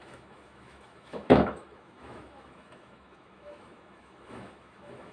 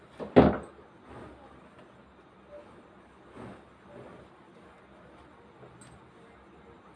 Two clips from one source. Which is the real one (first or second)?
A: second